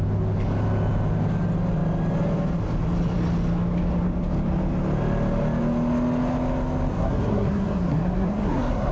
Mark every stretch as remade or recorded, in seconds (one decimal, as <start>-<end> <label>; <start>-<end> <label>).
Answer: 0.0-6.9 recorded; 6.9-8.9 remade

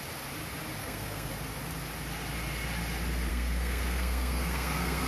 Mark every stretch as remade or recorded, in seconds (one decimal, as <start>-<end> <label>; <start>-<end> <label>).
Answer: 0.0-0.8 recorded; 0.8-1.3 remade; 1.3-3.3 recorded; 3.3-5.1 remade

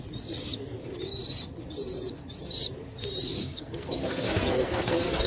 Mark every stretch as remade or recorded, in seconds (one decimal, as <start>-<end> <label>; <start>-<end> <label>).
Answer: 0.0-3.4 recorded; 3.4-5.3 remade

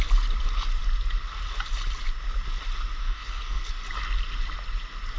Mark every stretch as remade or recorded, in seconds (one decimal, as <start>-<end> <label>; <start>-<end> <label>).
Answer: 0.0-3.0 recorded; 3.0-3.7 remade; 3.7-5.2 recorded